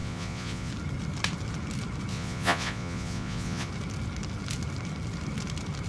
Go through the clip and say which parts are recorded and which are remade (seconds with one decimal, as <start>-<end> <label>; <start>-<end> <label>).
0.0-0.7 remade; 0.7-2.1 recorded; 2.1-3.7 remade; 3.7-5.9 recorded